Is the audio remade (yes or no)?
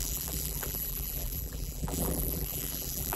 yes